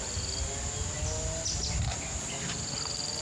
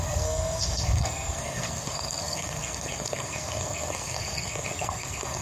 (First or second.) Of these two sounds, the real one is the first